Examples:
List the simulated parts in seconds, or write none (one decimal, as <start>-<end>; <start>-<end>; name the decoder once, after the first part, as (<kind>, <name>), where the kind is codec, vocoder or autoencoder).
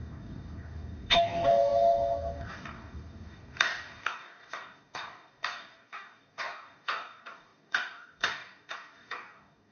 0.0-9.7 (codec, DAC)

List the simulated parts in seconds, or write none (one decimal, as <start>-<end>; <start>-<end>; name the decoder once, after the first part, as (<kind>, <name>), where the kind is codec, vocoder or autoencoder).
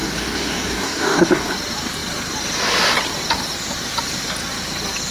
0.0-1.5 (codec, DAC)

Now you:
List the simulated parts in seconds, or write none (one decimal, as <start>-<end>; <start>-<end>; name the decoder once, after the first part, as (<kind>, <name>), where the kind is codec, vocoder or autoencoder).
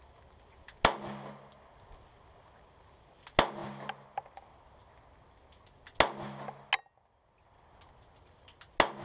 none